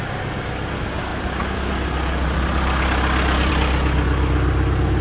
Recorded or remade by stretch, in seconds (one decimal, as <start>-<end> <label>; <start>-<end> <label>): 0.0-5.0 recorded